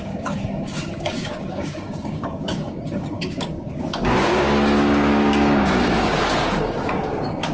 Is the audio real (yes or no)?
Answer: no